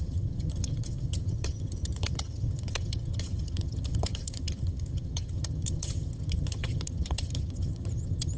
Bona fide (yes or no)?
no